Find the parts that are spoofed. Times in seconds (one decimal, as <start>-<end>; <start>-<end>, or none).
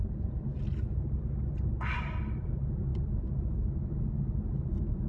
none